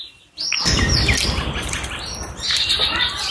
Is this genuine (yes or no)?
yes